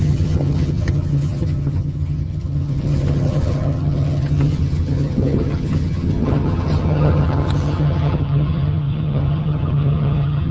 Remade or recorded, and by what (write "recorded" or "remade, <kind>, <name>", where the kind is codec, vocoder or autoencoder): remade, vocoder, HiFi-GAN